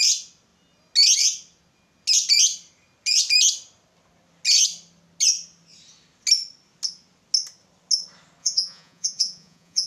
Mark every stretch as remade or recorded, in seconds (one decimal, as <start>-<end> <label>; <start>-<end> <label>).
0.0-8.4 recorded; 8.4-9.9 remade